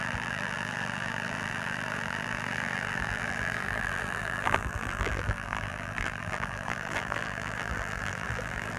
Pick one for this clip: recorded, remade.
remade